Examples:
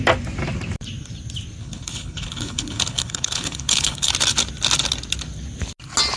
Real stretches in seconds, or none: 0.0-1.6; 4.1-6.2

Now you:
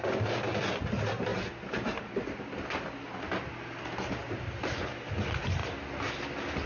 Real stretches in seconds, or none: 0.0-6.7

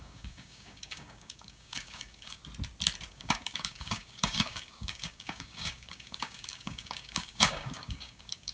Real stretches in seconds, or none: 2.4-3.1

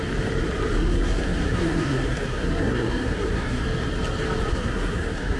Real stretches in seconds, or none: 0.0-0.9; 3.6-4.5

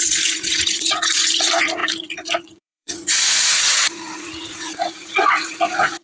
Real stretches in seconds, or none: none